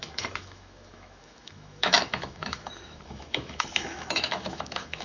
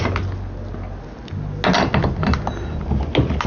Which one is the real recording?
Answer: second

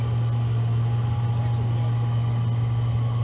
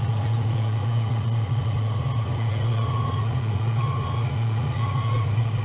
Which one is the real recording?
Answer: first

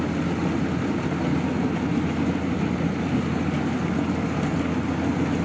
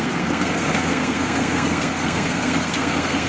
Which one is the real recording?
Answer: first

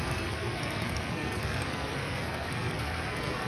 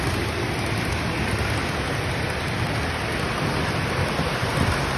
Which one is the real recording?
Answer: second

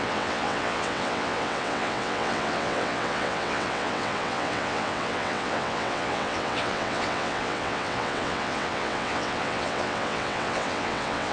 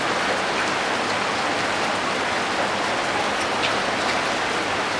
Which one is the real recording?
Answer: second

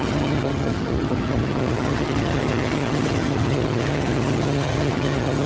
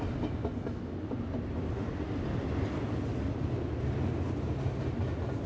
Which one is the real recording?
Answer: second